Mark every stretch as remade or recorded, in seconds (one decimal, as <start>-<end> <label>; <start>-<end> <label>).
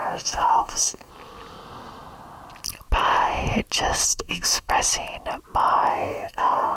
0.0-1.1 remade; 1.1-4.1 recorded; 4.1-4.7 remade; 4.7-5.9 recorded; 5.9-6.8 remade